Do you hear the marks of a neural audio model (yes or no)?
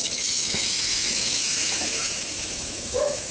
yes